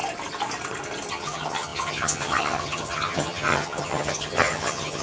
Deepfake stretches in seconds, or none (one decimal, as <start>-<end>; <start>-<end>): 1.1-5.0